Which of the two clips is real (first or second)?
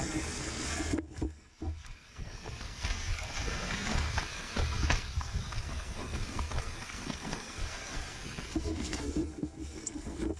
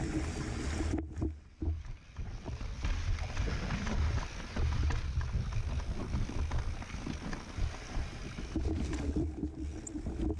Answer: second